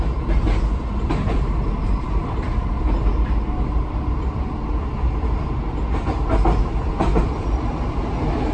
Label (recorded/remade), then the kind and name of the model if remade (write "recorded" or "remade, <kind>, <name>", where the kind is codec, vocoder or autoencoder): recorded